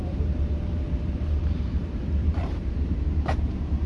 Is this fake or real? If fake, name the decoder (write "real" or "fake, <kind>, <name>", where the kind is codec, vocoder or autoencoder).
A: fake, vocoder, BigVGAN v2